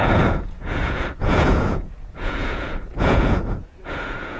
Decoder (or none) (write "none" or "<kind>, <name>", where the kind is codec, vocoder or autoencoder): vocoder, Vocos